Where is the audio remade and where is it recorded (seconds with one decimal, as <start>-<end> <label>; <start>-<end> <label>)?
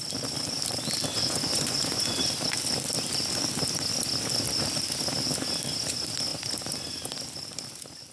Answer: 0.0-1.1 recorded; 1.1-2.2 remade; 2.2-8.1 recorded